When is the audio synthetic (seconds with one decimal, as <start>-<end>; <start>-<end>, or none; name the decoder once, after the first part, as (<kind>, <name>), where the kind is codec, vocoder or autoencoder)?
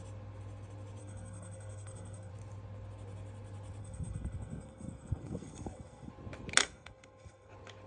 1.0-2.3 (codec, SNAC); 3.8-6.1; 6.6-7.5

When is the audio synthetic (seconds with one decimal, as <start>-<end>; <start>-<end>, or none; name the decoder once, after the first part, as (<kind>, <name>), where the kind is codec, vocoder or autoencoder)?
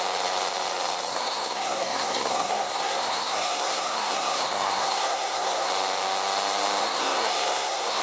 1.1-5.7 (codec, SNAC); 6.8-8.0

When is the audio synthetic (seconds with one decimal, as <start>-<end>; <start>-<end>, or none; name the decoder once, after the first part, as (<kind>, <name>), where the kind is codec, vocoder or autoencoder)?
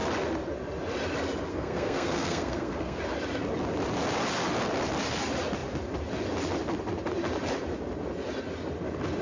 1.5-3.0 (codec, SNAC)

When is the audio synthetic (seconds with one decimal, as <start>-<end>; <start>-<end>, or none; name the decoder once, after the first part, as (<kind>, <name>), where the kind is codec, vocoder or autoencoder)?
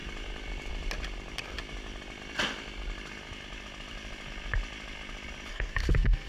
5.5-6.3 (codec, SNAC)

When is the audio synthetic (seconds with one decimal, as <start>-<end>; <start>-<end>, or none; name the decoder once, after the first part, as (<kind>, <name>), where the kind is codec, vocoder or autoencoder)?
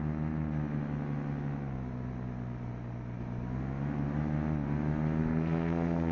5.2-6.1 (codec, SNAC)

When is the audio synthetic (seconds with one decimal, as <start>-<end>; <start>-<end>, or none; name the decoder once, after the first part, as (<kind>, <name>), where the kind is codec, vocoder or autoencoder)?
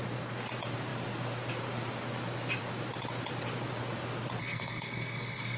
4.4-5.6 (codec, SNAC)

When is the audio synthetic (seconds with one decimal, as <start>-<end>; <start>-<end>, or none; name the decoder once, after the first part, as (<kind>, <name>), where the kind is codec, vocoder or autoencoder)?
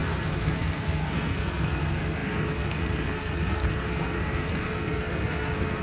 0.0-5.8 (codec, SNAC)